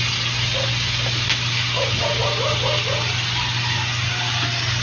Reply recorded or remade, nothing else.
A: recorded